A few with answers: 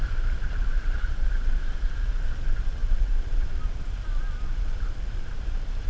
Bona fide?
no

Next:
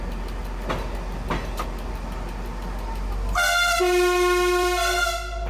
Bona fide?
yes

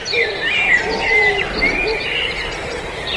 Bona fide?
no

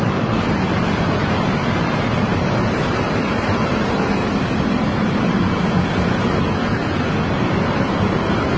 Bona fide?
no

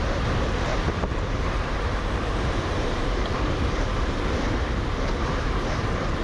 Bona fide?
no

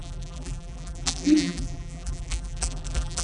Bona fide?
no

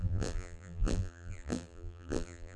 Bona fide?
no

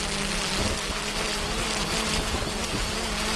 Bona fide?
yes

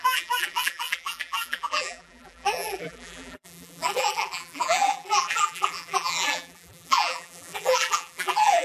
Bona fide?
no